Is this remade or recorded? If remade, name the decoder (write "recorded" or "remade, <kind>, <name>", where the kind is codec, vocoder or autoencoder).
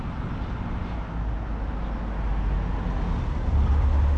recorded